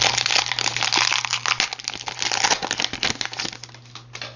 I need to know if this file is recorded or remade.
recorded